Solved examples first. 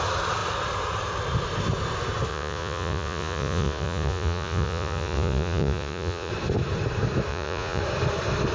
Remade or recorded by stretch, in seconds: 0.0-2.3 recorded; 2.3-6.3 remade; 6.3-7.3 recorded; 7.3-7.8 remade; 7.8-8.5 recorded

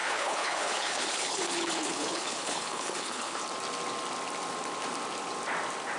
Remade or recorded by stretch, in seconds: 0.0-3.4 remade; 3.4-6.0 recorded

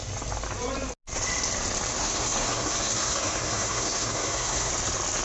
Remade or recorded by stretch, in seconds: 0.0-2.0 recorded; 2.0-4.7 remade; 4.7-5.2 recorded

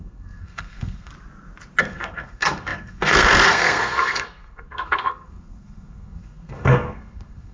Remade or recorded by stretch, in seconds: 0.0-1.1 remade; 1.1-1.8 recorded; 1.8-7.5 remade